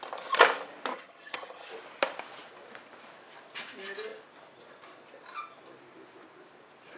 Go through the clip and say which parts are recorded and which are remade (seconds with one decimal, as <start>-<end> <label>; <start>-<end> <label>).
0.0-0.9 recorded; 0.9-1.7 remade; 1.7-7.0 recorded

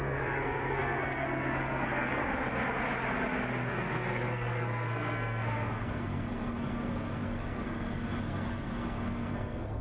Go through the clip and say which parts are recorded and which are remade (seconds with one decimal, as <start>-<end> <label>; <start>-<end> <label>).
0.0-2.2 remade; 2.2-3.7 recorded; 3.7-9.8 remade